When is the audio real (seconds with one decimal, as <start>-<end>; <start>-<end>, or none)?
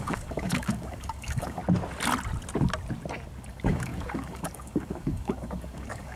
1.6-3.5